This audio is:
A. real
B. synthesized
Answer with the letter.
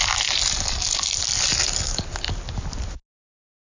A